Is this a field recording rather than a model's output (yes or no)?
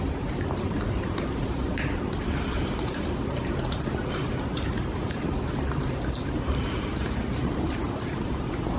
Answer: no